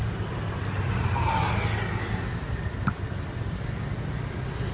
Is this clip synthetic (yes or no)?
no